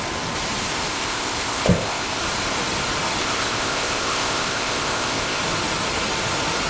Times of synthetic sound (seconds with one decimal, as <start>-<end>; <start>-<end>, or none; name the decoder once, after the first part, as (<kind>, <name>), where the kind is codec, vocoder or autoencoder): 0.9-2.2 (codec, ZipCodec); 3.2-5.4